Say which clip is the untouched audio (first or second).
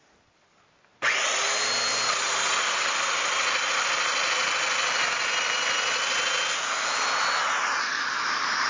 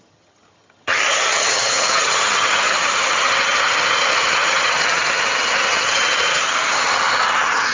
first